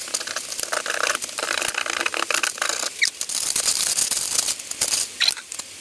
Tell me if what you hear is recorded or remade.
recorded